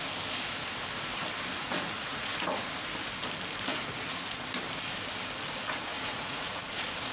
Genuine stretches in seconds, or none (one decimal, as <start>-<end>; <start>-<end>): 0.0-1.6; 2.7-3.7; 4.4-5.9